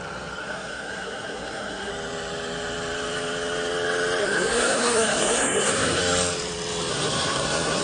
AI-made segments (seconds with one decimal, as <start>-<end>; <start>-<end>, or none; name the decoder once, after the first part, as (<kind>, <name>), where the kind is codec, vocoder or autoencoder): 0.4-1.9 (codec, SNAC); 4.2-6.0; 6.9-7.8